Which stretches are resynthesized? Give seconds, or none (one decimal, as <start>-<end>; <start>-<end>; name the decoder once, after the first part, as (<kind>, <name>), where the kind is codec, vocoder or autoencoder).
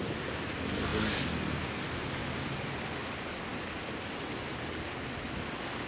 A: none